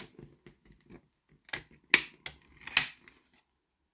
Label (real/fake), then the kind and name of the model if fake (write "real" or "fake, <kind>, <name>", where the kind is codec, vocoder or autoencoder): real